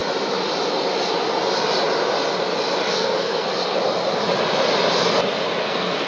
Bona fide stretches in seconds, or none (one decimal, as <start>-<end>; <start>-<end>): 0.0-2.9; 3.5-5.6